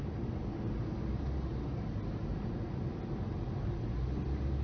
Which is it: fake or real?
real